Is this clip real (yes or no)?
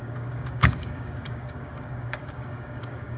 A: no